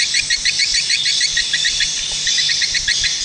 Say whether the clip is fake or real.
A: fake